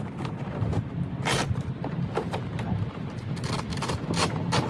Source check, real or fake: real